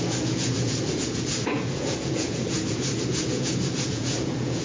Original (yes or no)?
no